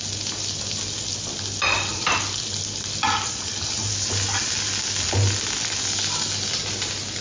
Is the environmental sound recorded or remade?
recorded